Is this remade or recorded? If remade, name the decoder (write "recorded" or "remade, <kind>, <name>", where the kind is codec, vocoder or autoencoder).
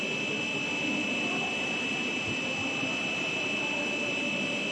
recorded